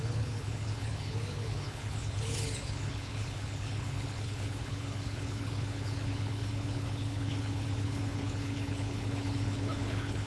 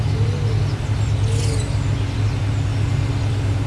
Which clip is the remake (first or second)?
first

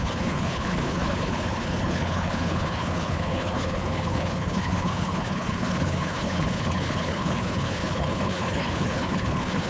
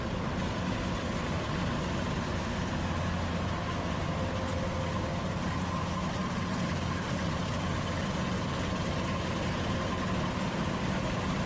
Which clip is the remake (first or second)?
first